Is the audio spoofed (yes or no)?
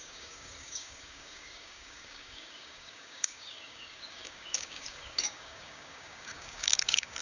yes